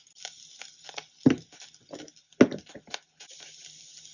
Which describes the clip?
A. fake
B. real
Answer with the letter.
B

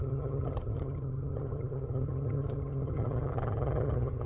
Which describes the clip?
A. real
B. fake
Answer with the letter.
B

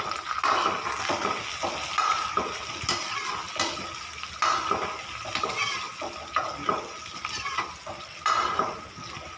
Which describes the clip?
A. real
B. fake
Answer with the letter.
A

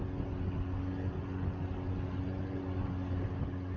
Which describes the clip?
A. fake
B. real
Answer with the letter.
B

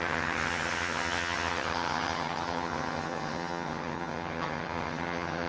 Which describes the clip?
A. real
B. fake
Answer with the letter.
B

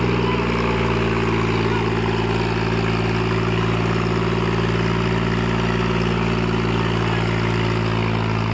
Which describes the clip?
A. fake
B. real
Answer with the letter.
B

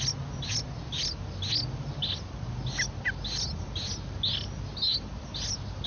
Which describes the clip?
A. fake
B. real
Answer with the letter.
B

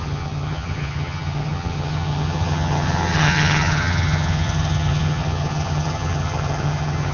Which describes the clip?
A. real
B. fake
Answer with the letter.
B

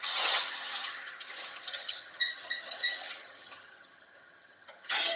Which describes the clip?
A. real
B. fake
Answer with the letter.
B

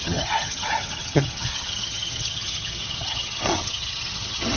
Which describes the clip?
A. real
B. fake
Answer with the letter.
B